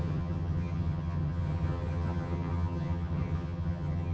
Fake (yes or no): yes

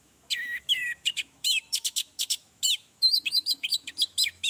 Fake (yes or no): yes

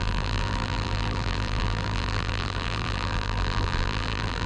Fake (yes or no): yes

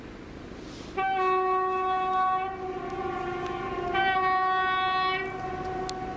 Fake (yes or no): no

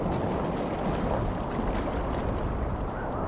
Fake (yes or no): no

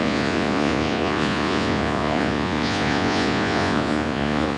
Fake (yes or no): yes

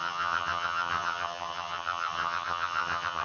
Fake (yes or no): yes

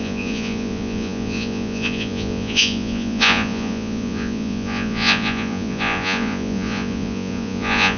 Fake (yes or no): yes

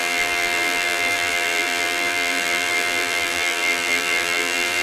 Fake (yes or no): yes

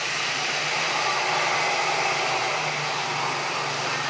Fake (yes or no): no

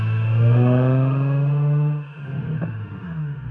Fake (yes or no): yes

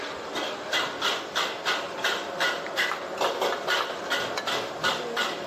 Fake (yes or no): no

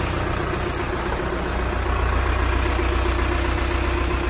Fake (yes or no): no